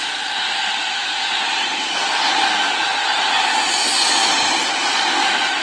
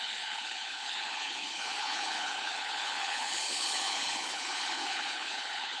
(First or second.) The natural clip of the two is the first